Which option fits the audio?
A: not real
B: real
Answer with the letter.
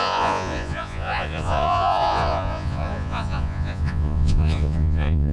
A